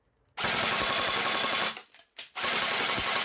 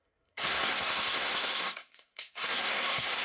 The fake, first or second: second